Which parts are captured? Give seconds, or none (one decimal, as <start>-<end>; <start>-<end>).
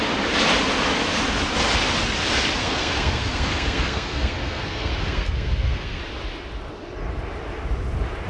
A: 0.0-2.6; 6.0-8.3